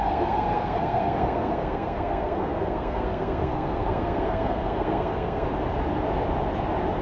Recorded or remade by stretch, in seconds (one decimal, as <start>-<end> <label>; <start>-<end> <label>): 0.0-5.5 remade; 5.5-7.0 recorded